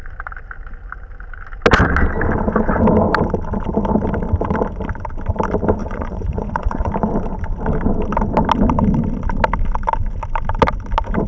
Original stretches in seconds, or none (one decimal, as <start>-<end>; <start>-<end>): 0.0-5.8; 6.9-11.3